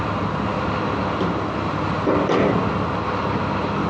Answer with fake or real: real